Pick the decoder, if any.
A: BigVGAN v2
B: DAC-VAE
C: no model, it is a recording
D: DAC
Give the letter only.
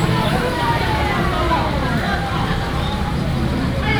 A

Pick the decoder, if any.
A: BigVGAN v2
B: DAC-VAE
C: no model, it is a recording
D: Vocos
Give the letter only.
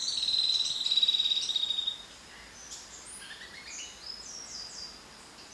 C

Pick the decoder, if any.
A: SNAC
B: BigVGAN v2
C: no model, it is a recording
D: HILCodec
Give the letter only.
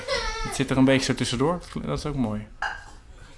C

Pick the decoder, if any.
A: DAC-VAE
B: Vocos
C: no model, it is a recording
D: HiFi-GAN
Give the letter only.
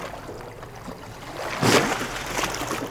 C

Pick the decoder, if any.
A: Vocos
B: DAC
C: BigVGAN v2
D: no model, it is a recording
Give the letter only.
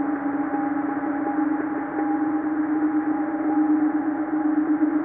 D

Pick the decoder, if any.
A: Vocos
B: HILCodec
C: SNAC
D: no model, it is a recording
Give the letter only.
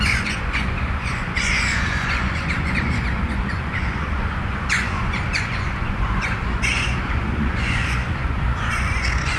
A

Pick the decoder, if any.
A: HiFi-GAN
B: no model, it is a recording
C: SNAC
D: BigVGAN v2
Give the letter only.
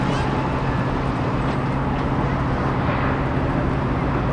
B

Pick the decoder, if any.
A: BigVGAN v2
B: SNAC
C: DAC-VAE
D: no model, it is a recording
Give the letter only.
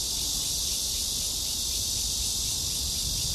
D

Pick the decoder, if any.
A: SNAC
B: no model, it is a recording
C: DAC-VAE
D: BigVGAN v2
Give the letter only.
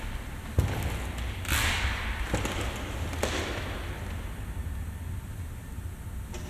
B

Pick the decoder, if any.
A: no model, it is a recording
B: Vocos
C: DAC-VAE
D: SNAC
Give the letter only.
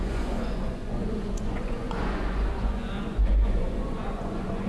B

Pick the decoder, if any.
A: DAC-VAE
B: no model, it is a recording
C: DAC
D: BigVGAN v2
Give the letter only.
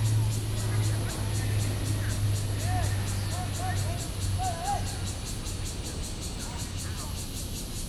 B